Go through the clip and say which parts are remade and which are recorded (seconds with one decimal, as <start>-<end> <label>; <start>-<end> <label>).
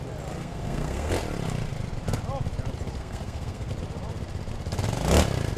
0.0-0.4 recorded; 0.4-1.1 remade; 1.1-3.0 recorded; 3.0-3.7 remade; 3.7-5.6 recorded